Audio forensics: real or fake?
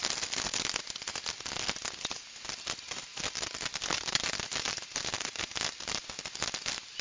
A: real